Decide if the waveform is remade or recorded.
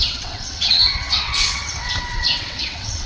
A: remade